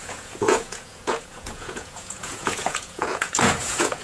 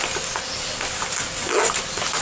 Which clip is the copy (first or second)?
first